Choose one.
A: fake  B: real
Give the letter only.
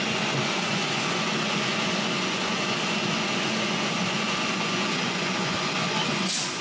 A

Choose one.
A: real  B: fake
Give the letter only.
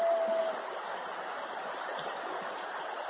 A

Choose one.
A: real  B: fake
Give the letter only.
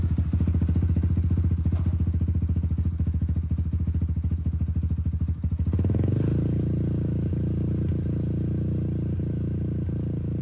A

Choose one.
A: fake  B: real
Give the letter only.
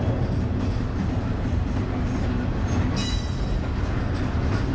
B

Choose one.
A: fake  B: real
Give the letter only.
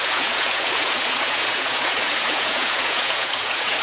A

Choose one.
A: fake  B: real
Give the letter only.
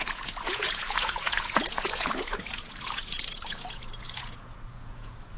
A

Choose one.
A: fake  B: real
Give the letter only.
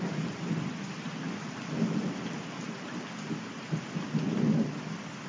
B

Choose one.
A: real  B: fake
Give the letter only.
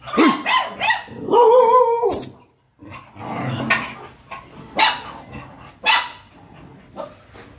A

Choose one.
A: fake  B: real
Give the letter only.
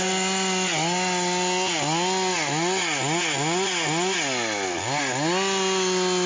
B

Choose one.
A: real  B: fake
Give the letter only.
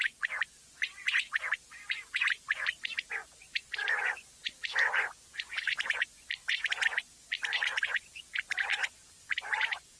B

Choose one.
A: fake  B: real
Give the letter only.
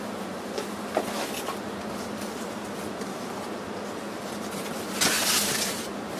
B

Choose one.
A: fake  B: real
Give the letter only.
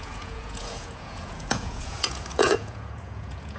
A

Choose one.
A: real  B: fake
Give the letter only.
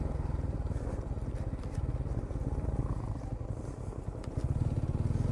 A